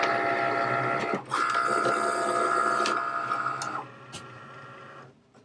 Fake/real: real